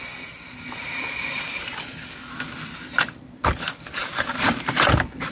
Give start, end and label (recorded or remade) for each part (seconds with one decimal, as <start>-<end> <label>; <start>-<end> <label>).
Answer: 0.0-5.3 recorded